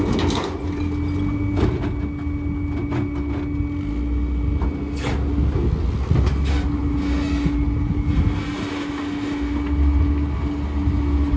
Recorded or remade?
recorded